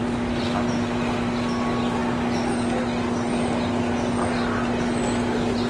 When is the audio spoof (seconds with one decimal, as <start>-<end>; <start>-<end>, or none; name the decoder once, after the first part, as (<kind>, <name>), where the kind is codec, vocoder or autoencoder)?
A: none